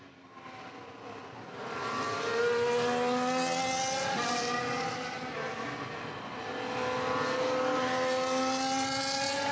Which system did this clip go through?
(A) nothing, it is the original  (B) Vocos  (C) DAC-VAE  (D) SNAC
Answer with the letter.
A